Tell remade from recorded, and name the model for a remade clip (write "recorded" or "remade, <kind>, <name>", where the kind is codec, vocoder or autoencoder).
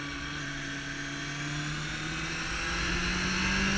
recorded